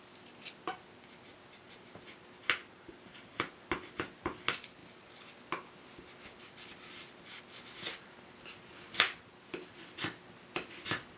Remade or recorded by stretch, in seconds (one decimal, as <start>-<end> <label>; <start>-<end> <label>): 0.0-2.6 recorded; 2.6-3.5 remade; 3.5-11.2 recorded